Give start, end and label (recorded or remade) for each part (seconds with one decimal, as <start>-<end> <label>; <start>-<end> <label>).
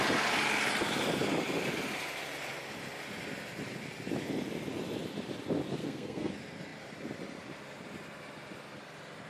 0.0-5.8 recorded; 5.8-6.3 remade; 6.3-9.3 recorded